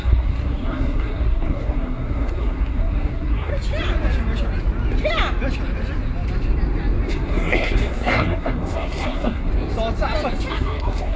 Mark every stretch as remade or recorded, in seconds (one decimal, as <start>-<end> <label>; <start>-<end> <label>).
0.0-3.5 remade; 3.5-7.1 recorded; 7.1-9.5 remade; 9.5-10.5 recorded; 10.5-11.2 remade